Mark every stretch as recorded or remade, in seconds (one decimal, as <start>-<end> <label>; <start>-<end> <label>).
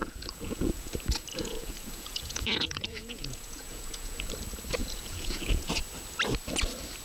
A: 0.0-0.9 remade; 0.9-1.3 recorded; 1.3-4.3 remade; 4.3-4.8 recorded; 4.8-5.7 remade; 5.7-7.0 recorded